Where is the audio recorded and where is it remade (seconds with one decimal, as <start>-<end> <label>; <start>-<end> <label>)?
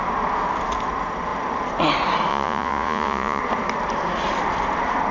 0.0-2.3 recorded; 2.3-3.4 remade; 3.4-5.1 recorded